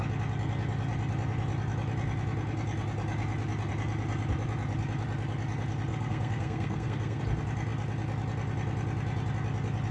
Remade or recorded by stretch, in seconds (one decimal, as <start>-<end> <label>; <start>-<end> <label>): 0.0-5.9 recorded; 5.9-7.2 remade; 7.2-9.9 recorded